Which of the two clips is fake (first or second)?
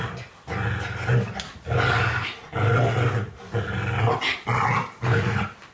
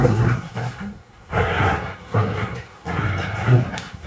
second